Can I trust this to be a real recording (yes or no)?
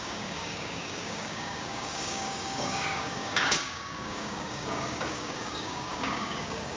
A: no